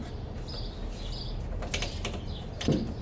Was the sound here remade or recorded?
recorded